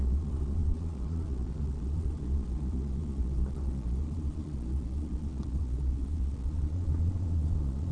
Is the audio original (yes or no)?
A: no